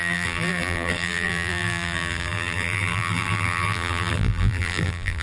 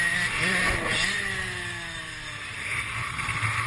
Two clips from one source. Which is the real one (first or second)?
second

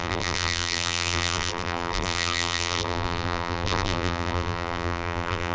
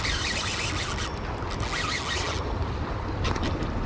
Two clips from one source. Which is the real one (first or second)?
second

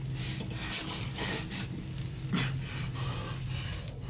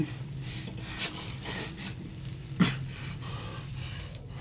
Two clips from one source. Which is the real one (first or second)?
first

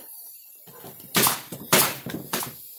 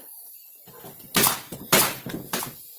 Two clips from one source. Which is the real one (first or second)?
second